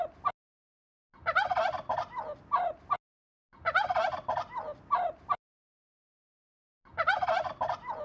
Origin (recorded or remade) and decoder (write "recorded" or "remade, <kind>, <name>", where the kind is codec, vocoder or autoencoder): recorded